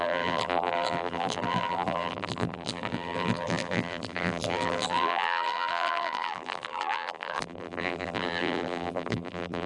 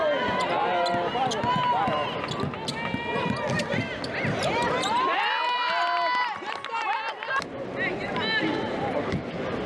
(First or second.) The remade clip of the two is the first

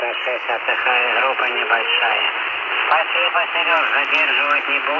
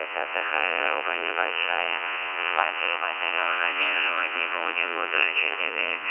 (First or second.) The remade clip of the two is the second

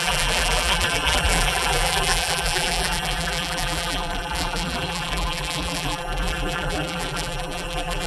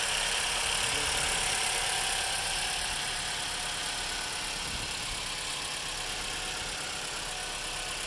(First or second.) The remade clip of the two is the first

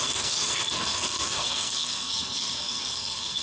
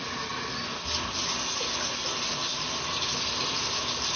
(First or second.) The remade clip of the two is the first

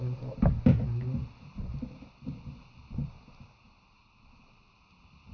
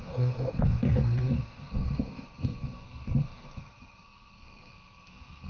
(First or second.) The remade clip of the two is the second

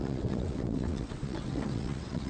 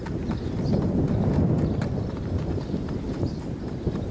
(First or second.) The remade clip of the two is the first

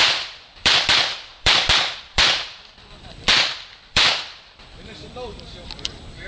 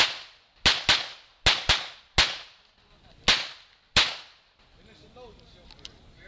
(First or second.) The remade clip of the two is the first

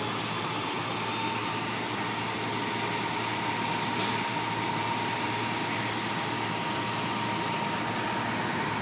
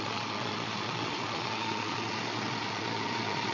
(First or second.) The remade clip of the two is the second